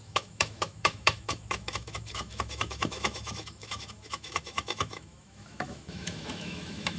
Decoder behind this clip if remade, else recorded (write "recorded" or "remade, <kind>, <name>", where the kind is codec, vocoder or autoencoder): remade, autoencoder, DAC-VAE